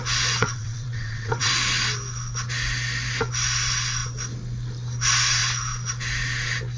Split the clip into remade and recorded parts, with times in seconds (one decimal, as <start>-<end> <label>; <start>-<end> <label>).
0.0-0.4 recorded; 0.4-1.5 remade; 1.5-6.8 recorded